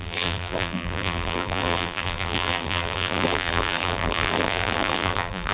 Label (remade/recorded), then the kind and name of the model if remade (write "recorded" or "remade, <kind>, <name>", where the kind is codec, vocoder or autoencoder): remade, vocoder, BigVGAN v2